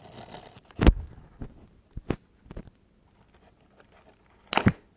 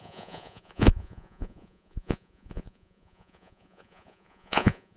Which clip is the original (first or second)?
first